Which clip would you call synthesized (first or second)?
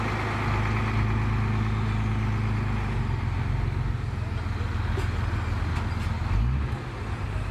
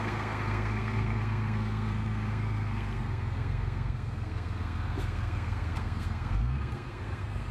second